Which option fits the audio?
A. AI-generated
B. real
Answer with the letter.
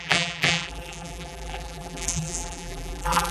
A